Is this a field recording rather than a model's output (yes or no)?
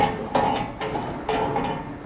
yes